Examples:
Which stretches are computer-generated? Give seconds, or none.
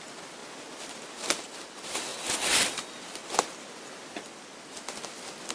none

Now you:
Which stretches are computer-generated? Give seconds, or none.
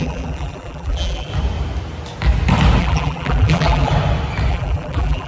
0.0-1.3 (vocoder, BigVGAN v2); 2.8-3.9; 4.5-5.3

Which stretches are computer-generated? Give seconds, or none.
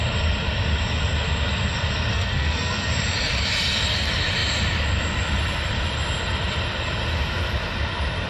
2.1-2.9 (codec, SNAC)